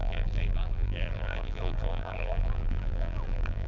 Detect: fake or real fake